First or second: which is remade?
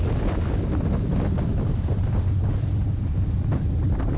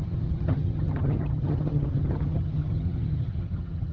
second